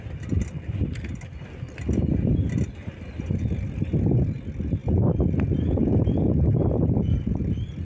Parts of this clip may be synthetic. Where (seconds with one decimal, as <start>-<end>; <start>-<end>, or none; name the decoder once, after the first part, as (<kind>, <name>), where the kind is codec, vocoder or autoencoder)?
none